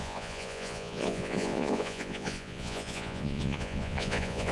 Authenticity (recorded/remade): remade